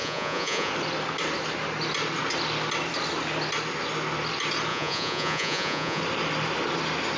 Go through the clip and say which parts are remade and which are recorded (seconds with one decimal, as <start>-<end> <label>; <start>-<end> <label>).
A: 0.0-0.7 remade; 0.7-4.7 recorded; 4.7-6.0 remade; 6.0-7.2 recorded

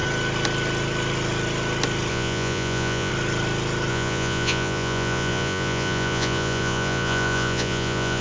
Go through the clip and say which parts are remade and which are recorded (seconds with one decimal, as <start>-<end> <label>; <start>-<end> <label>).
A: 0.0-2.1 recorded; 2.1-3.1 remade; 3.1-3.9 recorded; 3.9-8.2 remade

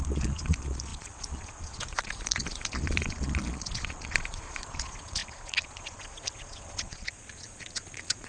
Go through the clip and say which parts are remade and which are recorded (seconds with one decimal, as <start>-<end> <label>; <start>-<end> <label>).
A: 0.0-8.3 remade

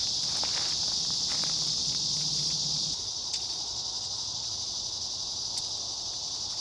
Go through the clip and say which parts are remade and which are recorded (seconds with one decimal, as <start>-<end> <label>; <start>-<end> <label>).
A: 0.0-1.8 recorded; 1.8-4.5 remade; 4.5-6.6 recorded

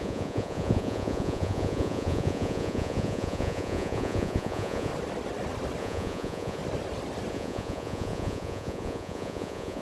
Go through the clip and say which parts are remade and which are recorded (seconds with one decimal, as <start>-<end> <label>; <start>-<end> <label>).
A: 0.0-4.9 remade; 4.9-5.8 recorded; 5.8-6.6 remade; 6.6-7.3 recorded; 7.3-9.8 remade

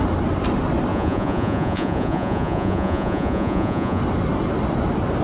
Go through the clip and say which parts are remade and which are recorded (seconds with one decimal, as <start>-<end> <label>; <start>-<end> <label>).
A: 0.0-0.9 recorded; 0.9-4.0 remade; 4.0-5.2 recorded

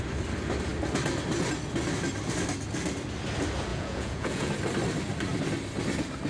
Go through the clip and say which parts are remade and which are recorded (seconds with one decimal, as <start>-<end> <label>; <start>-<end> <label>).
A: 0.0-3.7 recorded; 3.7-4.5 remade; 4.5-6.3 recorded

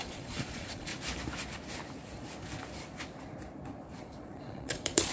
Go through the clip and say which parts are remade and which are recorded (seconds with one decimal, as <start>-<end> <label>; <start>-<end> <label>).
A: 0.0-0.9 remade; 0.9-4.0 recorded; 4.0-5.1 remade